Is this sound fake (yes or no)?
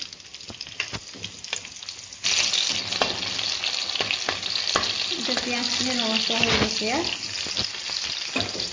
no